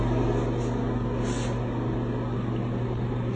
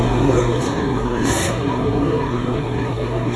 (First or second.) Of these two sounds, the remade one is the second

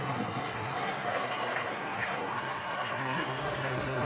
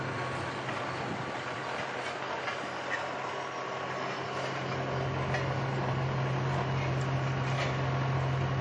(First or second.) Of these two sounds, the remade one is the first